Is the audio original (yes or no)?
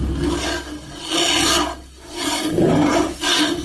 yes